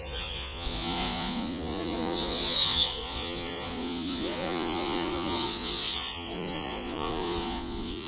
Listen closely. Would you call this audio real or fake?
fake